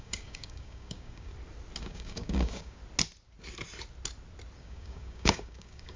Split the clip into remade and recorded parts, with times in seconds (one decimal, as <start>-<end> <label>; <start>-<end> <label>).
0.0-1.3 remade; 1.3-1.8 recorded; 1.8-2.8 remade; 2.8-4.6 recorded; 4.6-6.0 remade